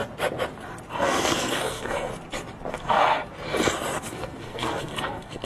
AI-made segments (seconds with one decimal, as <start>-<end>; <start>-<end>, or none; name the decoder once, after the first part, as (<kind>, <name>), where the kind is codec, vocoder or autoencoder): 0.9-2.1 (codec, SNAC); 2.7-3.2; 4.0-5.5

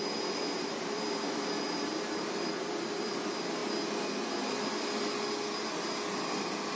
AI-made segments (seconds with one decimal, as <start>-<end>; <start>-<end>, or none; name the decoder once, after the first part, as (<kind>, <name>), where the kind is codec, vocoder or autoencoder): 0.0-3.6 (vocoder, BigVGAN v2)

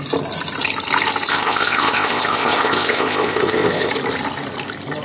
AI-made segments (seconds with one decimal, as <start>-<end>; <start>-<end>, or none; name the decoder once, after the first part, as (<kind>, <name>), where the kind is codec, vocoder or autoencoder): 1.3-3.9 (codec, ZipCodec)

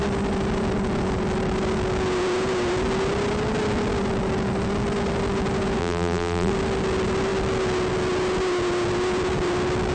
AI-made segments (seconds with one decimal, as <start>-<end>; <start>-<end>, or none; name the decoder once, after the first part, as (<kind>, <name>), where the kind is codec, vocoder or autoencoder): 5.8-6.5 (vocoder, BigVGAN v2)

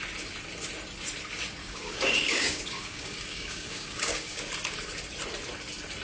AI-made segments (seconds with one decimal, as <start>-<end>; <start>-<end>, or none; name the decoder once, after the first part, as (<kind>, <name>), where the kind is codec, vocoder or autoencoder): 1.6-4.5 (codec, DAC)

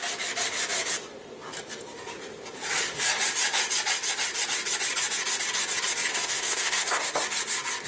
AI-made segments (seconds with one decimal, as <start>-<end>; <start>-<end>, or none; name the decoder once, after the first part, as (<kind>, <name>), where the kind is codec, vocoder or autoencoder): 6.1-7.0 (codec, SNAC)